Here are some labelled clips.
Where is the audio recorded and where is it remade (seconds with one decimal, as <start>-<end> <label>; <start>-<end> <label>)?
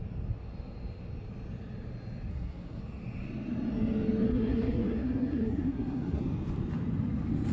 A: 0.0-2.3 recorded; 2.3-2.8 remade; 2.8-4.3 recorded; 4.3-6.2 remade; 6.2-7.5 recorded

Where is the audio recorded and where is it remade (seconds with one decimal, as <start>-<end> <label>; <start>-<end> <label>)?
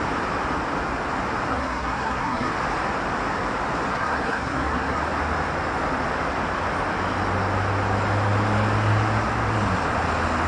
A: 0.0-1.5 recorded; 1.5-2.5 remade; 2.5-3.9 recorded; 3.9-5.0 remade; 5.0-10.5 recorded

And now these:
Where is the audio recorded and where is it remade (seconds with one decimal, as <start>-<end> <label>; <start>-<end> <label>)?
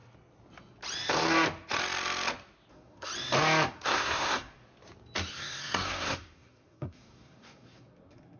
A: 0.0-2.7 recorded; 2.7-3.1 remade; 3.1-3.7 recorded; 3.7-4.6 remade; 4.6-5.3 recorded; 5.3-8.4 remade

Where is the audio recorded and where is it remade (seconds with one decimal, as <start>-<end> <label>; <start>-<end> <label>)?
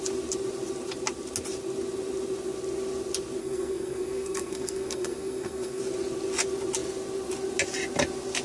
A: 0.0-3.4 recorded; 3.4-5.8 remade; 5.8-8.4 recorded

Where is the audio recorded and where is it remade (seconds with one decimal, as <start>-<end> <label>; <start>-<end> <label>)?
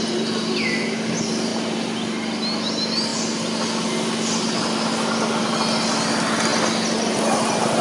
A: 0.0-7.8 recorded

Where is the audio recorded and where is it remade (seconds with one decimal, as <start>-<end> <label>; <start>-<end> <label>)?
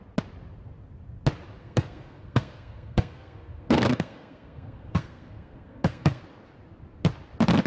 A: 0.0-1.6 recorded; 1.6-6.2 remade; 6.2-7.7 recorded